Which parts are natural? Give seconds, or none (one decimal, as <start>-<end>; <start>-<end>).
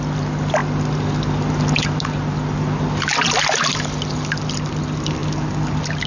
0.0-6.1